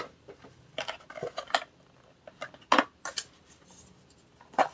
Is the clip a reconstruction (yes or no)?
no